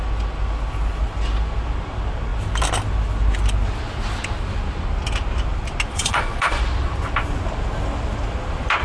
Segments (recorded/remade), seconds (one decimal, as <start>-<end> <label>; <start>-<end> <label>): 0.0-5.9 recorded; 5.9-6.6 remade; 6.6-8.8 recorded